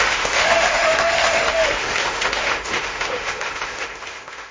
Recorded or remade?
remade